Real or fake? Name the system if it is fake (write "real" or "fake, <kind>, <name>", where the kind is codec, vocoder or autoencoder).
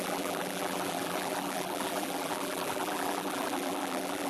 fake, vocoder, BigVGAN v2